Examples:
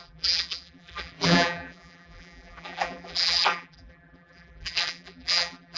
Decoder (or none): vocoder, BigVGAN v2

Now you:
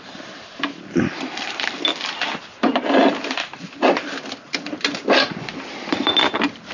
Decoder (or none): vocoder, BigVGAN v2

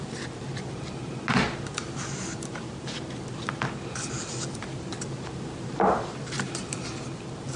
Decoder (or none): none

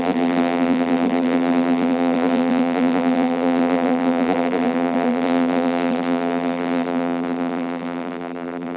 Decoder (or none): vocoder, BigVGAN v2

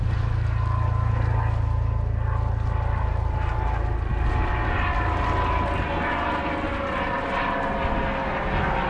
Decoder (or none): none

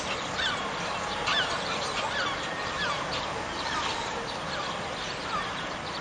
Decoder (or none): vocoder, BigVGAN v2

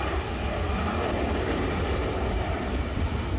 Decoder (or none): vocoder, BigVGAN v2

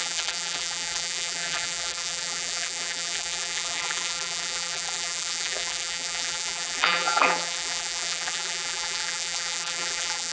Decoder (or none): vocoder, BigVGAN v2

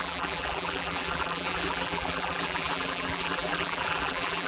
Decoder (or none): vocoder, BigVGAN v2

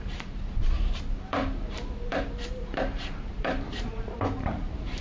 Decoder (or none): vocoder, BigVGAN v2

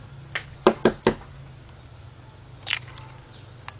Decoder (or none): none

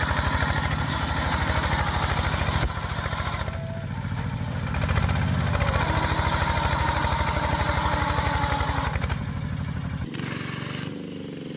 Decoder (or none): none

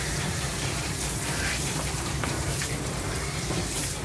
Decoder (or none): vocoder, BigVGAN v2